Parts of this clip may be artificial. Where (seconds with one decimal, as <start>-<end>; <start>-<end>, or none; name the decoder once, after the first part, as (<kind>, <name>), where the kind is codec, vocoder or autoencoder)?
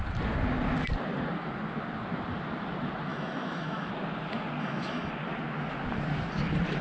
3.1-3.9 (autoencoder, DAC-VAE); 4.6-5.1